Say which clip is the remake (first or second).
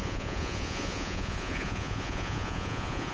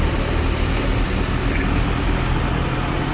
first